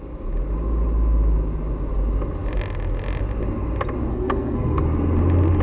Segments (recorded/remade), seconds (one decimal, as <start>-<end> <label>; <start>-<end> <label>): 0.0-4.1 recorded; 4.1-4.8 remade; 4.8-5.6 recorded